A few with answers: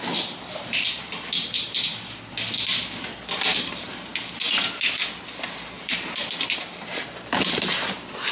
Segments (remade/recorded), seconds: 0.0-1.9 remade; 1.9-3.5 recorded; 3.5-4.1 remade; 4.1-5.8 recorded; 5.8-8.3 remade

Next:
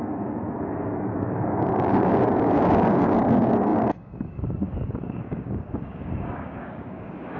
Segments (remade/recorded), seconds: 0.0-7.4 remade

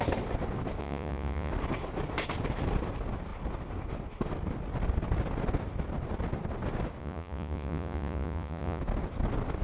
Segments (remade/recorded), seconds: 0.0-0.8 recorded; 0.8-1.5 remade; 1.5-7.0 recorded; 7.0-8.8 remade; 8.8-9.6 recorded